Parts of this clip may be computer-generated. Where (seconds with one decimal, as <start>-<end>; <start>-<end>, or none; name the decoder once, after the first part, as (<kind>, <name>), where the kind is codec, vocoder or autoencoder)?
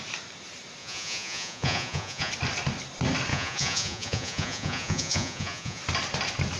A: 0.8-2.3 (vocoder, Vocos); 3.3-5.8